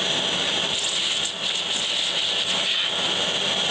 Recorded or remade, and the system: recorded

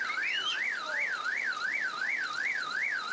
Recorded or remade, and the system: recorded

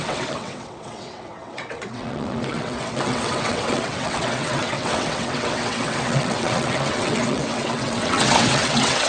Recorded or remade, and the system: remade, vocoder, WaveNeXt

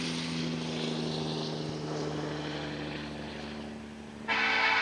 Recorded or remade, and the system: recorded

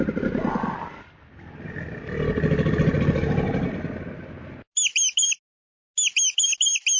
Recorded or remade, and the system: recorded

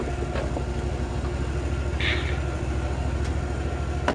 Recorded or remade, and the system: recorded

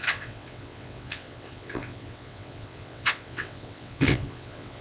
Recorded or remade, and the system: remade, vocoder, WaveNeXt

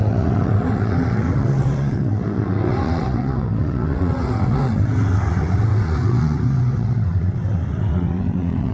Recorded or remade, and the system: remade, vocoder, WaveNeXt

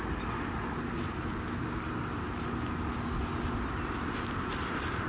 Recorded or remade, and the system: recorded